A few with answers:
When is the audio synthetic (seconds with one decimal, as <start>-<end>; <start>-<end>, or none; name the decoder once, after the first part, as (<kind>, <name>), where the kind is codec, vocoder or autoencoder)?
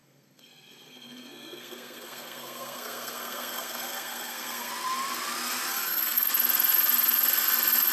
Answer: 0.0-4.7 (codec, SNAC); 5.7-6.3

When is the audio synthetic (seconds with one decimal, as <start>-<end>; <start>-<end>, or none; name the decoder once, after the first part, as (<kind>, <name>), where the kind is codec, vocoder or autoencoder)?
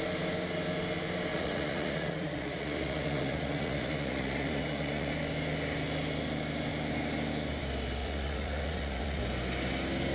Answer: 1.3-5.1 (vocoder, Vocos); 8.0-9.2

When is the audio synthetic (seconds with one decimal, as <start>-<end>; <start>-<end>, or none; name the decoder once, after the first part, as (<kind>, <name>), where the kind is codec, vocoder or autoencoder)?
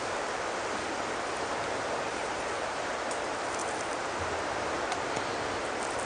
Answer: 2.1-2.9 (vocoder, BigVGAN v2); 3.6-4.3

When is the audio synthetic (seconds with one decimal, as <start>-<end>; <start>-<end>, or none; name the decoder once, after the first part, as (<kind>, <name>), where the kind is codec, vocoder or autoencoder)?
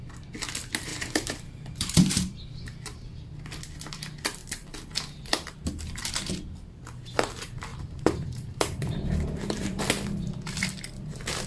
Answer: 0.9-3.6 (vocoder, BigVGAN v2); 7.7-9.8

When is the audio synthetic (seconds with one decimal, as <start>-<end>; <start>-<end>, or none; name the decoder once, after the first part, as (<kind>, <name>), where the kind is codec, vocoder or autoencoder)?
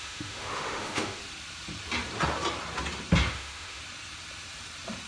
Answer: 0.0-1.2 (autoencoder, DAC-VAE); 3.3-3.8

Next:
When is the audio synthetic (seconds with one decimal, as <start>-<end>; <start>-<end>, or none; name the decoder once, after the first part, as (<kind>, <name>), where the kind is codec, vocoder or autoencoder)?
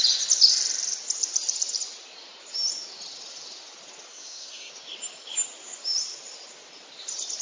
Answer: 4.1-4.7 (codec, SNAC)